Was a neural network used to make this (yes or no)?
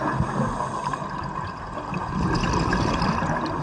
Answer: no